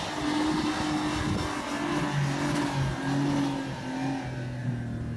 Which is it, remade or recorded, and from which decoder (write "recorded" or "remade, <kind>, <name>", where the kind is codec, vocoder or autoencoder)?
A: recorded